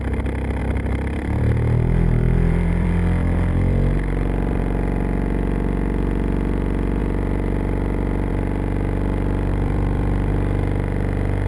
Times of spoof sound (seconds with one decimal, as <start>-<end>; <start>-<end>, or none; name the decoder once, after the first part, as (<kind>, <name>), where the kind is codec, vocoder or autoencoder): 0.6-4.6 (vocoder, BigVGAN v2); 7.0-8.3; 9.5-10.3